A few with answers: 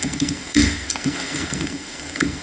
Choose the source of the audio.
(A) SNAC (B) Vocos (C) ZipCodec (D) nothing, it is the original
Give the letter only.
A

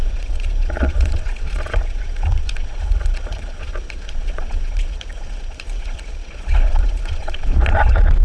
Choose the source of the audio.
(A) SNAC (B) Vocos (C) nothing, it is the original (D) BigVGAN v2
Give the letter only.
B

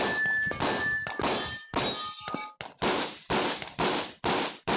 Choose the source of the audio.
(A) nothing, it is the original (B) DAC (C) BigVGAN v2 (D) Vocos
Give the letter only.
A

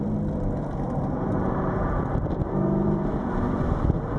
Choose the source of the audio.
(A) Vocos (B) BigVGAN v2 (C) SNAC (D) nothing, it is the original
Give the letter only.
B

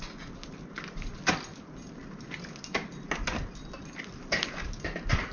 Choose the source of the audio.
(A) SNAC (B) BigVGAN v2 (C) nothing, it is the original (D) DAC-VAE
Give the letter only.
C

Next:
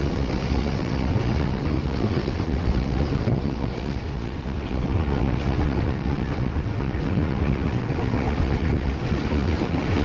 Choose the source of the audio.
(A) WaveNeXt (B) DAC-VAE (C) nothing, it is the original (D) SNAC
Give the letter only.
A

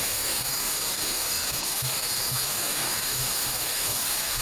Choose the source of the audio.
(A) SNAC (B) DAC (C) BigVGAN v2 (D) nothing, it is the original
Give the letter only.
B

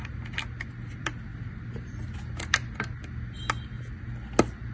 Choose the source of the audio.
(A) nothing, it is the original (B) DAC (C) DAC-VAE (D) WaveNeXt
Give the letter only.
A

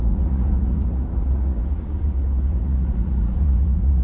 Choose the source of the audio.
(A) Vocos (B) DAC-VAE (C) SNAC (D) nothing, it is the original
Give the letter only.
A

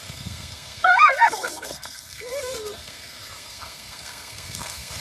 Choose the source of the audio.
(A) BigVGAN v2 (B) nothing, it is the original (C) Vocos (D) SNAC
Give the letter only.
D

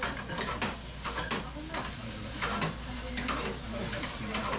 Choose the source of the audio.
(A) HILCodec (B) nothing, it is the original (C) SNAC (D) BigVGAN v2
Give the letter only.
B